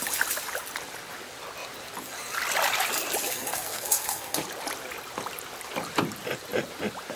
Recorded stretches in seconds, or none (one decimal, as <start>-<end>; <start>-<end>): 0.0-3.2; 4.4-7.2